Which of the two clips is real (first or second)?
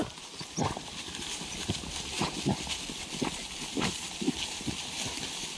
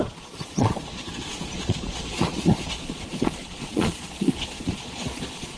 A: first